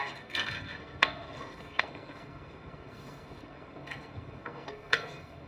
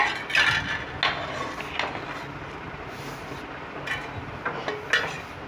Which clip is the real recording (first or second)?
second